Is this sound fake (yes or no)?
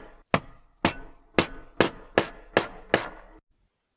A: no